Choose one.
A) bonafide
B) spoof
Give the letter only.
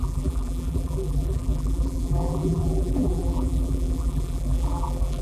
B